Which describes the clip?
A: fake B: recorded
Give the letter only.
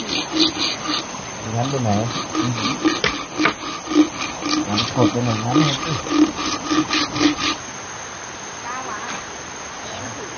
B